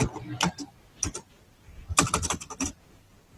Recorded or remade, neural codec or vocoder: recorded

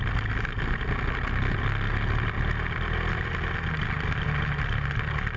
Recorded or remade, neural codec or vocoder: recorded